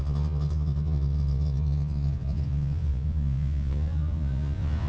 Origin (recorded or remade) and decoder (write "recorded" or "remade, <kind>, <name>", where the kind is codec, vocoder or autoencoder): remade, vocoder, Vocos